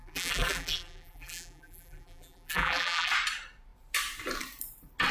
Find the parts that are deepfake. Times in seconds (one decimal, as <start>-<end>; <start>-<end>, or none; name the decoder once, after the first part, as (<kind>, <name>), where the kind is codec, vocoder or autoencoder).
0.0-3.1 (vocoder, BigVGAN v2)